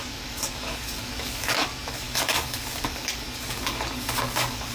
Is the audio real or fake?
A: fake